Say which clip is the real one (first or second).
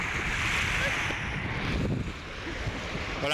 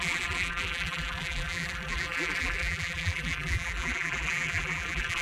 first